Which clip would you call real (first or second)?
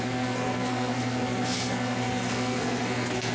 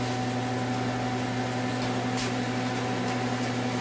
second